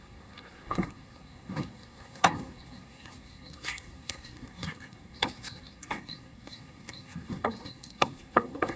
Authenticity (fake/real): fake